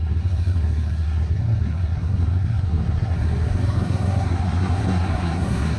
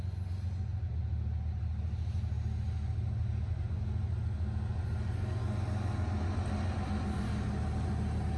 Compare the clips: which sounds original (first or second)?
second